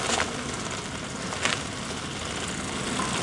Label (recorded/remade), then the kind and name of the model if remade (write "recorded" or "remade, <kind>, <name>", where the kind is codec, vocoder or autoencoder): recorded